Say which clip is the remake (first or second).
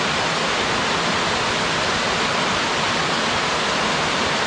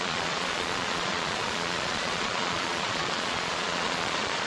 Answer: second